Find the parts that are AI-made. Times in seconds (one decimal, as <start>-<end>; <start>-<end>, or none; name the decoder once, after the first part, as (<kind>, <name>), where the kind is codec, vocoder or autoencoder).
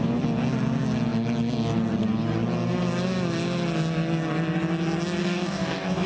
5.2-6.1 (codec, DAC)